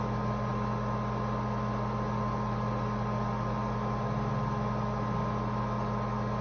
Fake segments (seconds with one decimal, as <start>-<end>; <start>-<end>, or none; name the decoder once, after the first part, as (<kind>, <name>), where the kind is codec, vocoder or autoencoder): none